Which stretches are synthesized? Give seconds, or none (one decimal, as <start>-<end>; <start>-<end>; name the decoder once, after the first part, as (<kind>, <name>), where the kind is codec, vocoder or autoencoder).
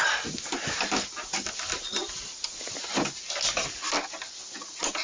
none